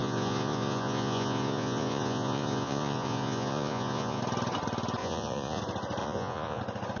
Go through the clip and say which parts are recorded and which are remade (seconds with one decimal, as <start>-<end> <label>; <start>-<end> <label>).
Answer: 0.0-4.2 remade; 4.2-5.0 recorded; 5.0-5.6 remade; 5.6-6.0 recorded; 6.0-6.6 remade; 6.6-7.0 recorded